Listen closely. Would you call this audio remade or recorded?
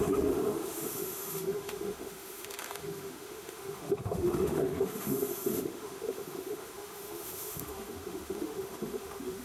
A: remade